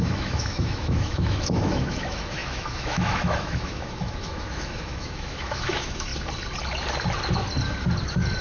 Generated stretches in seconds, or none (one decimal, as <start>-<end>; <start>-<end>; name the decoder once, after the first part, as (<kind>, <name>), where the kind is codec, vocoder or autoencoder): 0.0-6.1 (autoencoder, DAC-VAE)